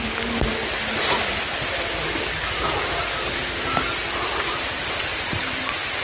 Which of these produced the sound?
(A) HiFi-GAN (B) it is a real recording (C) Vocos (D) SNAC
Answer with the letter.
B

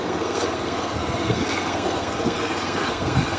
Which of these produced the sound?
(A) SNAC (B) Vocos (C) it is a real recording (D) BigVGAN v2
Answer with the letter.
A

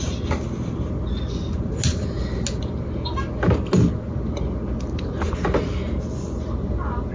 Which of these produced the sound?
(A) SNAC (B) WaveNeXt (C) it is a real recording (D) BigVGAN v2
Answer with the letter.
C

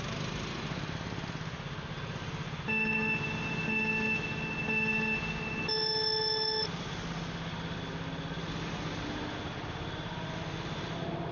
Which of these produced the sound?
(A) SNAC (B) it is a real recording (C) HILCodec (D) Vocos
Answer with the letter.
B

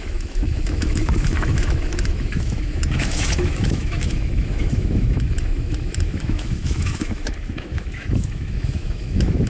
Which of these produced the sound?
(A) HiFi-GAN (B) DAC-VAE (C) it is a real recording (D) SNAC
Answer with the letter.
B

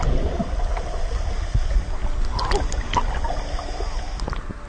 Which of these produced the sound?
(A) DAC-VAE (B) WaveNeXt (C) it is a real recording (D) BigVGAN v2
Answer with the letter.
C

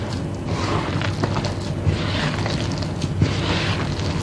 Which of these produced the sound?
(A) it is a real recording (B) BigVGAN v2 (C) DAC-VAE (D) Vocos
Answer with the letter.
A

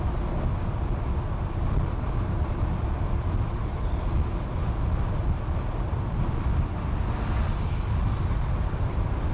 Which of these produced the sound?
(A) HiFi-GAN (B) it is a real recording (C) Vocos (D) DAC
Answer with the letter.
B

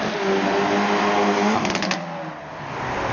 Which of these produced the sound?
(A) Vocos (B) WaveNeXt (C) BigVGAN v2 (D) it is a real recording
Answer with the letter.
D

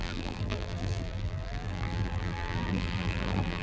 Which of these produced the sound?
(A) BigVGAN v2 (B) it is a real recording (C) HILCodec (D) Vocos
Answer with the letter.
A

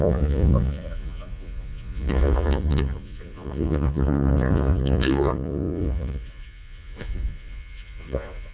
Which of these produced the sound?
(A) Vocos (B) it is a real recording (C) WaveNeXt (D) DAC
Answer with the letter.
A